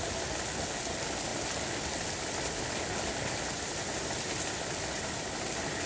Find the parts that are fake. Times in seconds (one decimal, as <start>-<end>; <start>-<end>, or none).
none